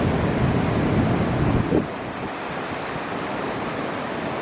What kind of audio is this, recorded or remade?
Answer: recorded